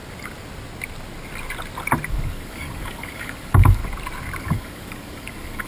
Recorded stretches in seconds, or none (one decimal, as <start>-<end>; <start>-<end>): 0.0-2.1; 3.8-4.4